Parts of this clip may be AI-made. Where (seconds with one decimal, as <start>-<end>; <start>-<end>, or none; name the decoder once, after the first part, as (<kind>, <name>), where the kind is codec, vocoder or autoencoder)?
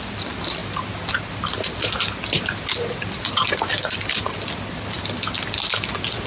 none